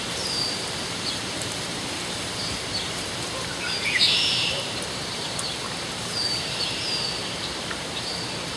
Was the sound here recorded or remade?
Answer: remade